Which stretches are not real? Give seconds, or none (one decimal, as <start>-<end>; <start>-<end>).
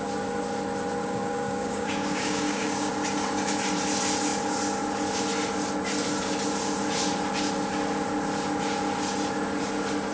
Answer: 1.0-2.9